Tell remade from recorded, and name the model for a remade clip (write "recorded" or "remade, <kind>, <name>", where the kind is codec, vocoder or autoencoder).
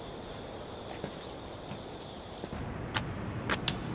recorded